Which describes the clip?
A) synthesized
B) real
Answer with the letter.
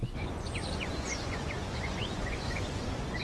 A